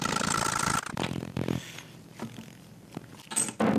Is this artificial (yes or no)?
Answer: no